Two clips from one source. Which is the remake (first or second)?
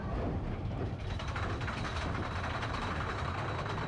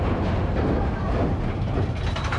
first